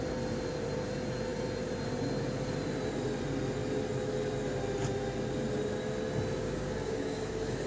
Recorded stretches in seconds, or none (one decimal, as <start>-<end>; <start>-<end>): 0.0-6.4